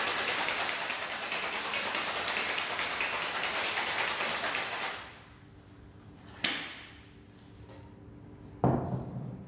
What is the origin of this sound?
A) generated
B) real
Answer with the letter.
B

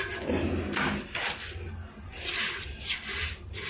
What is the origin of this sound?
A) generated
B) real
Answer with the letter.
B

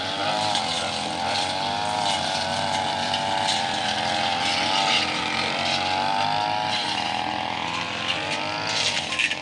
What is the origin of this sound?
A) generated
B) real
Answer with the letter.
B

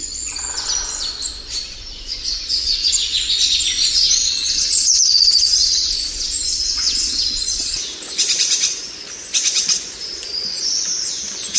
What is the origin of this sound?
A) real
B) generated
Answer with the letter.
B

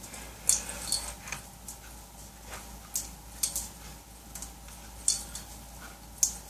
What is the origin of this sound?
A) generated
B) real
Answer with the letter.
B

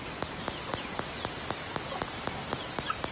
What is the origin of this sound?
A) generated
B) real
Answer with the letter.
B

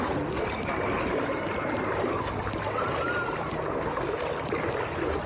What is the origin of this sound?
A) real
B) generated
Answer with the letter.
A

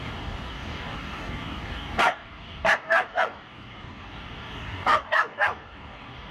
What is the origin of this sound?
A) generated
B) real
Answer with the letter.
A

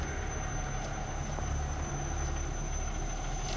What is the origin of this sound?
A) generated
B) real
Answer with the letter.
B